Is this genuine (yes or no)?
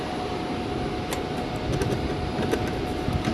yes